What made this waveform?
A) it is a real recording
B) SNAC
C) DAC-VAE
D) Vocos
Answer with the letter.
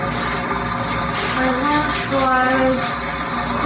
A